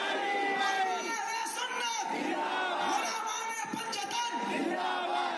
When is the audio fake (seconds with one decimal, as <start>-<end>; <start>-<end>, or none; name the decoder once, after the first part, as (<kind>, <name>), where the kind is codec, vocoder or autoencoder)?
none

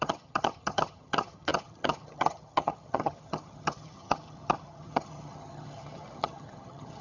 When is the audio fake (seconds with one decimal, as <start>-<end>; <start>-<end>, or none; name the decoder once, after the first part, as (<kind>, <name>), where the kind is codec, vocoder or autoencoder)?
0.0-7.0 (vocoder, HiFi-GAN)

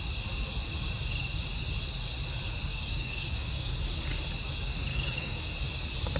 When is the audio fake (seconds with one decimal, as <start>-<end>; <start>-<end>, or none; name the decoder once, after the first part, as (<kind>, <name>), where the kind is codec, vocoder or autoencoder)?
2.7-3.8 (codec, DAC); 4.9-5.4